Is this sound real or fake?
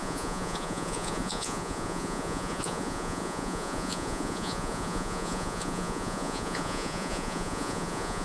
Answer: fake